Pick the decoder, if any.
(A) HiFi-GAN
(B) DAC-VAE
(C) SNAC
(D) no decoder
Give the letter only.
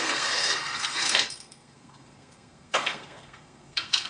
C